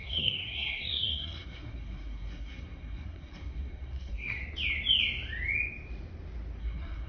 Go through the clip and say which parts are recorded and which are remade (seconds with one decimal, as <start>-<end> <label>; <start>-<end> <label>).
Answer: 0.0-4.4 remade; 4.4-6.6 recorded; 6.6-7.1 remade